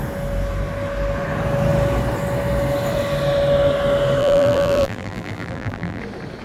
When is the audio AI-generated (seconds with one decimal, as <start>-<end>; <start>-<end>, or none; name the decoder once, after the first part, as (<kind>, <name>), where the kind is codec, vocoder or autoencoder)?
4.2-6.0 (vocoder, BigVGAN v2)